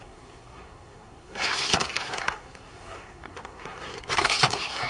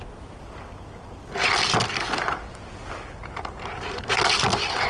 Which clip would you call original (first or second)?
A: second